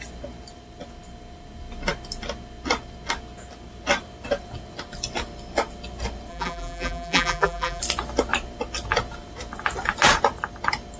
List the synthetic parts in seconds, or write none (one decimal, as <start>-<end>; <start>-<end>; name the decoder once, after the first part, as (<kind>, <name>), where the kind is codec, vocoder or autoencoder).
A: 6.3-7.8 (vocoder, BigVGAN v2)